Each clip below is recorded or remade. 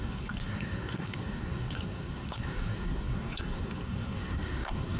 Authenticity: remade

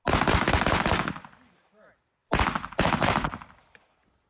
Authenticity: recorded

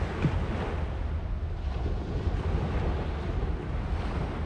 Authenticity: recorded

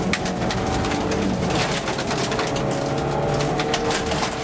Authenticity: recorded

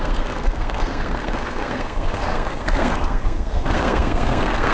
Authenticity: remade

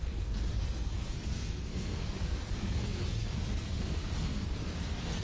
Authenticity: remade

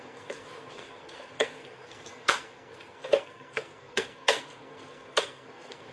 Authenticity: remade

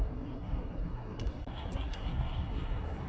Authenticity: remade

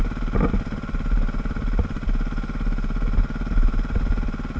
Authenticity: recorded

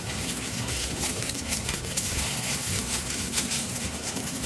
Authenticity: remade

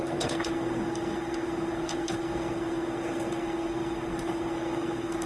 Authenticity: remade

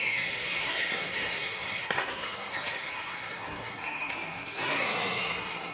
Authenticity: remade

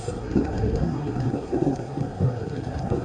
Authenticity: remade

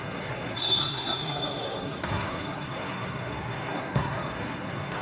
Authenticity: remade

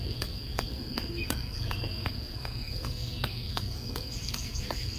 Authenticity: remade